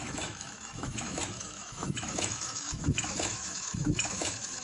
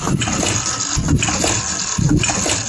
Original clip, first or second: second